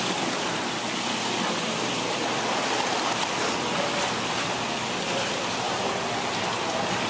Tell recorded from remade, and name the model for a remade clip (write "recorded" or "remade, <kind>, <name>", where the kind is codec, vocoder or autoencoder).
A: recorded